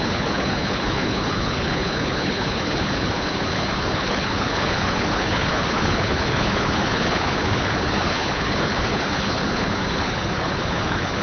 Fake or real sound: fake